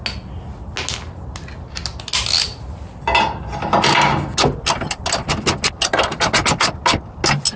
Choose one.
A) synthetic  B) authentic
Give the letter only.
B